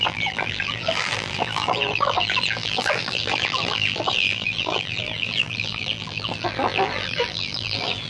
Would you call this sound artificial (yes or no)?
yes